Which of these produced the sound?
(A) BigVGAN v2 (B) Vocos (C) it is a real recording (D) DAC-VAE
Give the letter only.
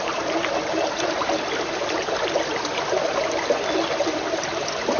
C